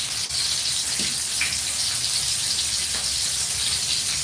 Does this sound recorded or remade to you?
recorded